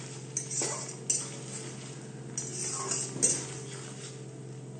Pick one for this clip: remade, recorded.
recorded